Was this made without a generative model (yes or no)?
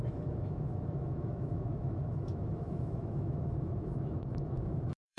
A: no